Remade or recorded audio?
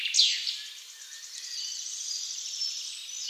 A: recorded